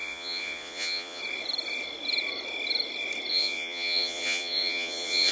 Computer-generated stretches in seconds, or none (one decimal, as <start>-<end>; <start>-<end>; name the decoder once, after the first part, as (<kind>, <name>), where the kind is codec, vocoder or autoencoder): 0.0-1.2 (vocoder, Vocos); 3.3-5.3